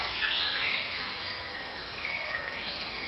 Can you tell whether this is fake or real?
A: fake